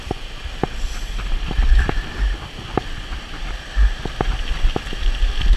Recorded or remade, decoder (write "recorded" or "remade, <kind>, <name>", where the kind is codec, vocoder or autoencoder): recorded